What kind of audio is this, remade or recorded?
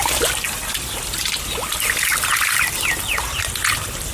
recorded